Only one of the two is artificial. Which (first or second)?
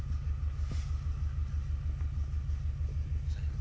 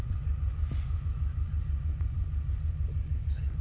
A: second